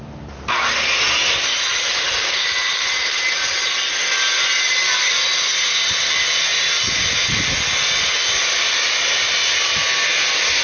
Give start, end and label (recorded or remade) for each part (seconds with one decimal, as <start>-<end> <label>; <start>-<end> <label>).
0.0-1.5 recorded; 1.5-3.4 remade; 3.4-10.6 recorded